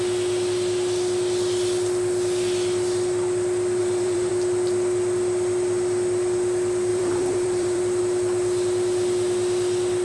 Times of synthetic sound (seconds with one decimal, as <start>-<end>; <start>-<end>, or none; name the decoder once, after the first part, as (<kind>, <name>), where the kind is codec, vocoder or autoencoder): 3.8-4.3 (vocoder, BigVGAN v2); 6.9-8.0

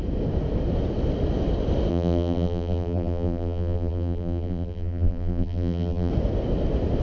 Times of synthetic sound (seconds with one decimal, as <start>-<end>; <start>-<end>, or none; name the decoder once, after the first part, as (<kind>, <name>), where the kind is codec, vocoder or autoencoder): 1.9-6.1 (vocoder, BigVGAN v2)

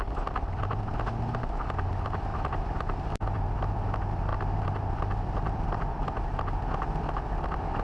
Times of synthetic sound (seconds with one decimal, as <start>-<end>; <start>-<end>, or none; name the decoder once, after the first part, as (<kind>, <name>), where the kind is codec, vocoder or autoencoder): 2.3-3.7 (vocoder, BigVGAN v2); 4.3-6.2

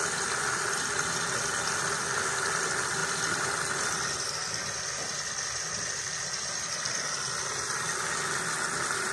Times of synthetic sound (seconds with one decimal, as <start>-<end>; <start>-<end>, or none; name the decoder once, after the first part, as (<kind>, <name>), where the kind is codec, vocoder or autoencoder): 3.0-3.5 (vocoder, BigVGAN v2)

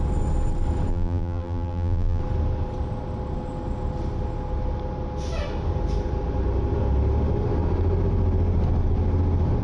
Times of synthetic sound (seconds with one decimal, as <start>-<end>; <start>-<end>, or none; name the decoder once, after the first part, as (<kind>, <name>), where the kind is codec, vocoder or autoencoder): 0.9-2.2 (vocoder, BigVGAN v2)

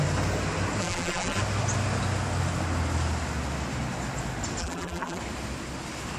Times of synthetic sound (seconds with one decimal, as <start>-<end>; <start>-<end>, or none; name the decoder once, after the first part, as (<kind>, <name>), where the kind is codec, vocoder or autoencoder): 0.8-1.4 (vocoder, BigVGAN v2); 4.6-5.2

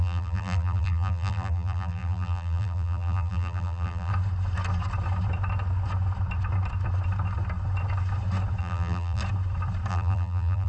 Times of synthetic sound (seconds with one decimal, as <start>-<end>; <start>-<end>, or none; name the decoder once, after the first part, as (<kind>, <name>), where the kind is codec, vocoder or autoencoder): 0.0-4.1 (vocoder, BigVGAN v2); 8.6-9.2; 9.9-10.7

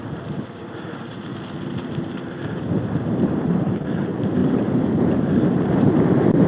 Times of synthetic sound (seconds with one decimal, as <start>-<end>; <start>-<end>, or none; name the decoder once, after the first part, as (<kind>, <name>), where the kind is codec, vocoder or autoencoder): 0.0-1.3 (vocoder, BigVGAN v2); 2.0-6.5